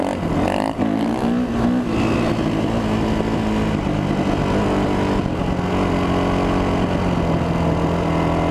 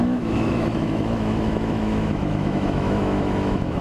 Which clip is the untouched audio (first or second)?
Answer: first